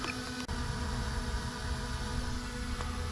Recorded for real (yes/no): yes